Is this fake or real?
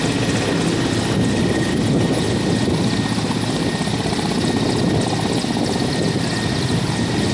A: real